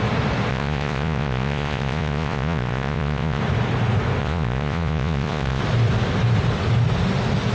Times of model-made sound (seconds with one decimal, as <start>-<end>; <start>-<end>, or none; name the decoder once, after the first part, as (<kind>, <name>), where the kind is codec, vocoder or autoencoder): 0.5-3.4 (vocoder, Vocos); 4.2-5.6